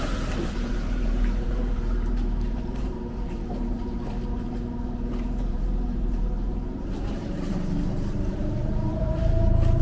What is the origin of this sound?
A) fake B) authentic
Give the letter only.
A